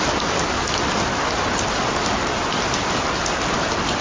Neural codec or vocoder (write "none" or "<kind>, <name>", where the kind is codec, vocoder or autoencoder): none